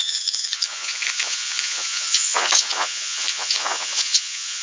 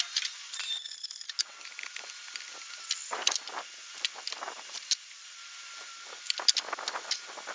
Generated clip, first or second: first